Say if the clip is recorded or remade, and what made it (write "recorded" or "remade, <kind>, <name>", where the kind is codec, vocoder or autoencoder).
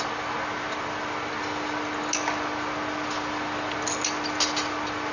recorded